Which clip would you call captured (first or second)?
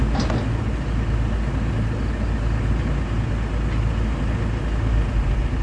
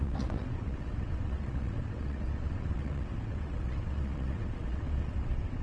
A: first